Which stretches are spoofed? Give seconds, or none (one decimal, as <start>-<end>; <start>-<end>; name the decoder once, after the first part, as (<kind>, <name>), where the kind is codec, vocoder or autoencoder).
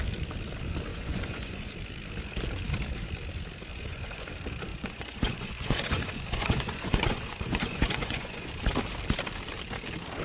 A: 0.9-1.7 (vocoder, Vocos); 3.7-4.3; 4.7-8.5